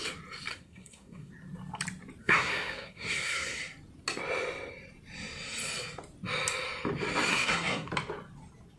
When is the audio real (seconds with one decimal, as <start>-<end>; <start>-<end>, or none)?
0.0-0.5; 1.3-2.2; 3.6-7.3; 7.9-8.8